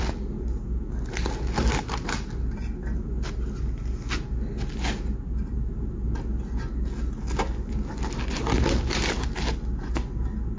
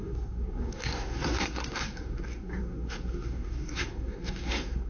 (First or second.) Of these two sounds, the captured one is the first